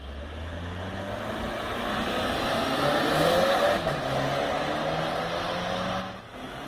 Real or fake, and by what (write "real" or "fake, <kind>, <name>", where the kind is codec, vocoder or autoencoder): real